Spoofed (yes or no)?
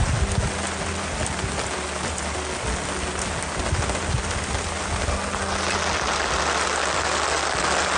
no